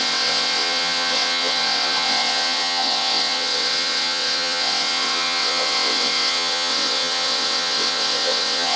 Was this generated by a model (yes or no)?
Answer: yes